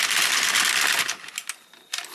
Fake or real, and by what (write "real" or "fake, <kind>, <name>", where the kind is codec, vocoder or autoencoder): real